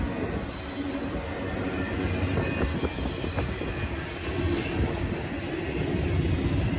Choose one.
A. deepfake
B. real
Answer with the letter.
B